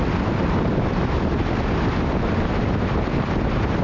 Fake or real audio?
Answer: fake